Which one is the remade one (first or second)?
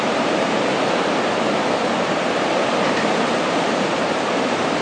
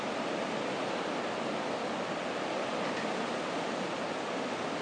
first